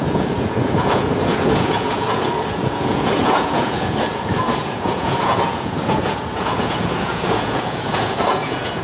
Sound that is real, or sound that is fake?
fake